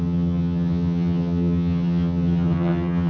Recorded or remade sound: remade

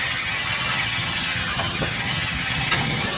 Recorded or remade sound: remade